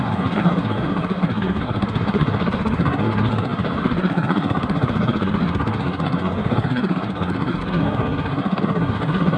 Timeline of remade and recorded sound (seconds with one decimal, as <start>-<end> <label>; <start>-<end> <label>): 0.0-9.4 remade